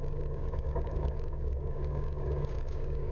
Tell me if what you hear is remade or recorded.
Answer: remade